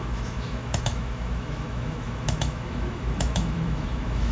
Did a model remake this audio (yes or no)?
yes